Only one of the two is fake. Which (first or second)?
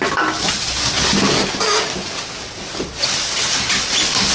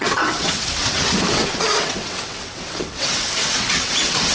second